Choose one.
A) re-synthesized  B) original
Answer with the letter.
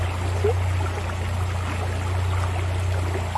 B